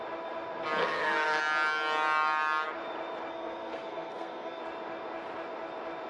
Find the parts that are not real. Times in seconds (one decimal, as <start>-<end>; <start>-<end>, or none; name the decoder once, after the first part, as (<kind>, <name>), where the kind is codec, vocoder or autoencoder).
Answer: 0.8-1.4 (codec, SNAC); 3.3-4.6